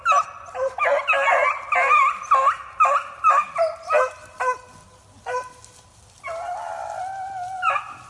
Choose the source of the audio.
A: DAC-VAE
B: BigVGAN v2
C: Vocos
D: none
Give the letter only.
D